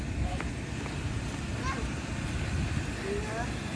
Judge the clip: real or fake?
real